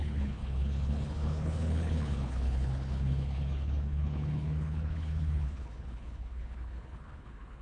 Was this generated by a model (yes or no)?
yes